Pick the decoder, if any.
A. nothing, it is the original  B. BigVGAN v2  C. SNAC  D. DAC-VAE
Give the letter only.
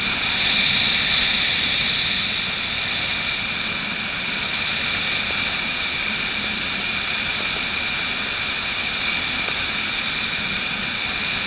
A